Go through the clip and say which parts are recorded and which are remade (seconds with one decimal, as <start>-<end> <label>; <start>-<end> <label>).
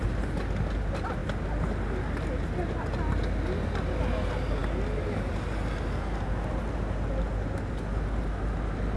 0.0-9.0 recorded